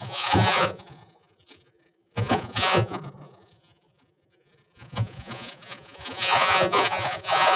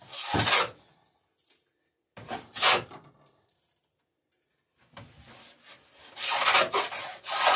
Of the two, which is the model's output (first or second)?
first